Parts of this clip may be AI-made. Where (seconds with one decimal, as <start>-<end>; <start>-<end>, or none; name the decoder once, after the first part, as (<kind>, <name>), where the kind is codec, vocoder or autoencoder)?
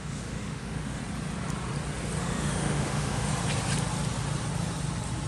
0.0-1.0 (autoencoder, DAC-VAE); 2.2-3.3